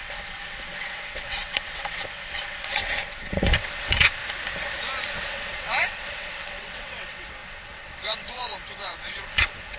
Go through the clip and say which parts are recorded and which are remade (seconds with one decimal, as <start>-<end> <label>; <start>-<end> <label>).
0.0-4.2 remade; 4.2-5.1 recorded; 5.1-9.8 remade

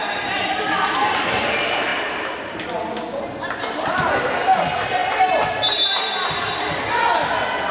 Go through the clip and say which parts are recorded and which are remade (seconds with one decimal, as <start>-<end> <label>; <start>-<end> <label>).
0.0-7.7 recorded

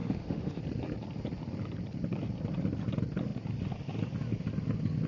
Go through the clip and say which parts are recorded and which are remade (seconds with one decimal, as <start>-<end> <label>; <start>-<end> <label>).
0.0-0.6 remade; 0.6-5.1 recorded

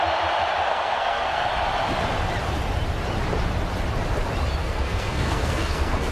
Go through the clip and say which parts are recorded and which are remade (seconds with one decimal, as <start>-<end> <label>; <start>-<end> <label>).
0.0-0.7 recorded; 0.7-1.5 remade; 1.5-4.6 recorded; 4.6-6.1 remade

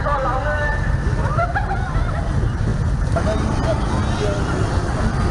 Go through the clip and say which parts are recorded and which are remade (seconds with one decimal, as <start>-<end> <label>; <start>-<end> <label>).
0.0-5.3 recorded

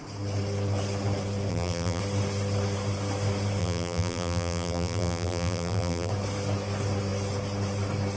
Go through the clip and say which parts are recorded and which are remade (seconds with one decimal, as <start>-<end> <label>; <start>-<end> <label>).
0.0-1.5 recorded; 1.5-2.0 remade; 2.0-3.6 recorded; 3.6-6.1 remade; 6.1-8.2 recorded

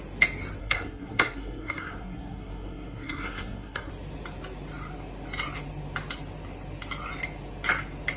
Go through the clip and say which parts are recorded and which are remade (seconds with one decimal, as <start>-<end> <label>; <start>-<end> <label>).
0.0-0.6 recorded; 0.6-3.9 remade; 3.9-8.2 recorded

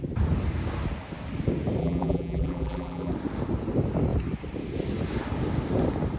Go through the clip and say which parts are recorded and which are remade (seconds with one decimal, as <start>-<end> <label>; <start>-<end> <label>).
0.0-1.8 recorded; 1.8-3.1 remade; 3.1-6.2 recorded